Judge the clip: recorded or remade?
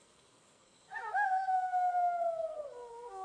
remade